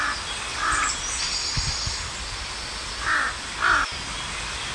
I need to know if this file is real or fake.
real